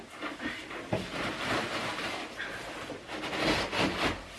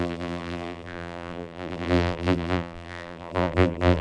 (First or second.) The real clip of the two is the first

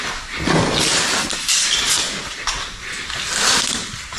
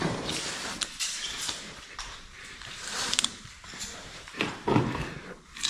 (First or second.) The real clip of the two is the first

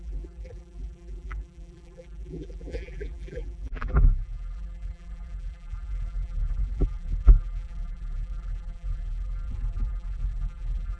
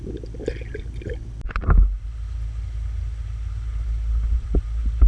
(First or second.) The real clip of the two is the second